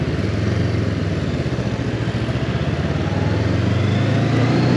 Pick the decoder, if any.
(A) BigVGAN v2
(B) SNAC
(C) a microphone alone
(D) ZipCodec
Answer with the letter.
C